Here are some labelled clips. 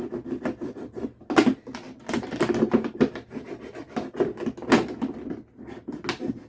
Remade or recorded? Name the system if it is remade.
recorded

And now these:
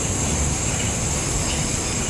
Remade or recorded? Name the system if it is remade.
recorded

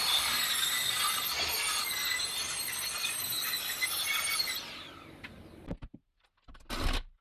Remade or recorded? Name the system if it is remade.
recorded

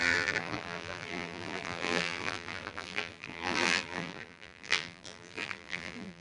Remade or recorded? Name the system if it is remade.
remade, vocoder, BigVGAN v2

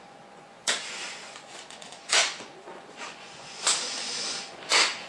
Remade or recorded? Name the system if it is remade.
remade, vocoder, Vocos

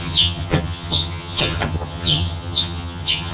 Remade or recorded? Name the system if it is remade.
remade, vocoder, HiFi-GAN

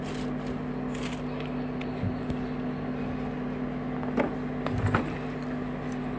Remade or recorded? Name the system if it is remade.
recorded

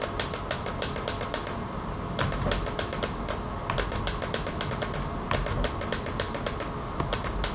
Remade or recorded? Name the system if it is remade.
recorded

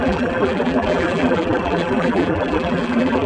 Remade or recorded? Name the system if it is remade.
remade, vocoder, BigVGAN v2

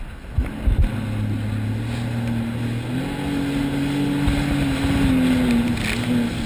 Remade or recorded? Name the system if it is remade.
recorded